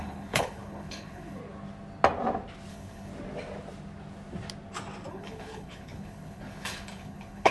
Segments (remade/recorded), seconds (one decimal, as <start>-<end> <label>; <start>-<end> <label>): 0.0-1.4 remade; 1.4-2.7 recorded; 2.7-3.1 remade; 3.1-5.1 recorded; 5.1-7.5 remade

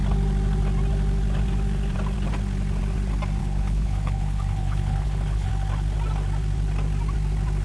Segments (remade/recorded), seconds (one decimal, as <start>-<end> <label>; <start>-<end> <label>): 0.0-3.4 recorded; 3.4-5.5 remade; 5.5-7.6 recorded

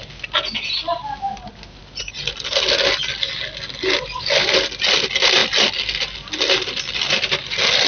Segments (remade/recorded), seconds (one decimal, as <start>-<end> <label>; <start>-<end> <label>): 0.0-7.9 recorded

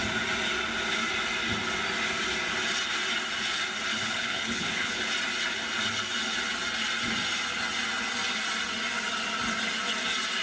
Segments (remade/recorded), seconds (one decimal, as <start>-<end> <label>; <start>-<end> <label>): 0.0-3.9 recorded; 3.9-5.1 remade; 5.1-10.4 recorded